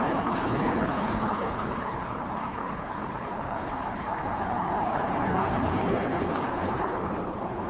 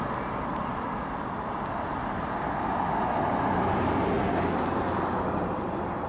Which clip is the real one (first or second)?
second